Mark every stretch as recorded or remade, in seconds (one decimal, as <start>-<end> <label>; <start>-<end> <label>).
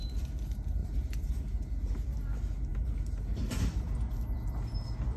0.0-0.8 recorded; 0.8-1.3 remade; 1.3-5.2 recorded